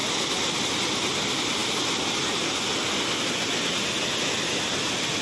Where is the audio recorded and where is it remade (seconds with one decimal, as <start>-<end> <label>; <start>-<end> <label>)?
0.0-5.2 recorded